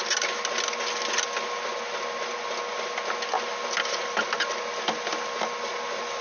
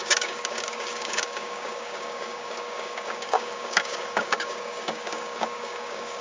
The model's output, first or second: second